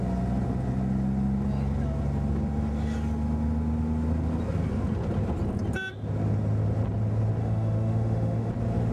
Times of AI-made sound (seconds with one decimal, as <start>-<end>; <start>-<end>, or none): 7.4-8.5